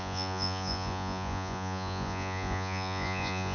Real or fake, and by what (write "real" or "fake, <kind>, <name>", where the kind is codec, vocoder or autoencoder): fake, vocoder, Vocos